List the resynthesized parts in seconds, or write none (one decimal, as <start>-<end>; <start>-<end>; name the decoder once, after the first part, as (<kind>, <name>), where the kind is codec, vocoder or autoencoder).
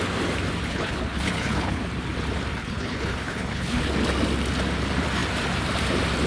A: 0.7-1.8 (codec, HILCodec); 2.6-3.9